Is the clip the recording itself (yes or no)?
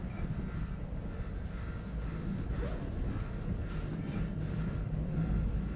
yes